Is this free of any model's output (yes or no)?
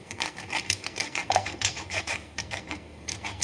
no